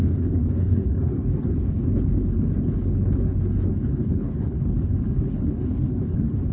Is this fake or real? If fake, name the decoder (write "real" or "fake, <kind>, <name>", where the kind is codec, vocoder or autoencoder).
fake, codec, HILCodec